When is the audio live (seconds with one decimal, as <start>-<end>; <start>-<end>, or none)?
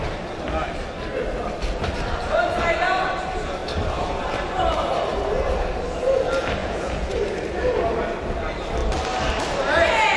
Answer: 0.0-6.6; 7.1-10.2